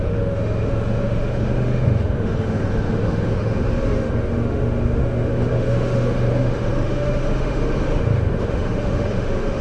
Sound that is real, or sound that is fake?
fake